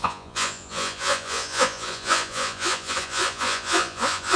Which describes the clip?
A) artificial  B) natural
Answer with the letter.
A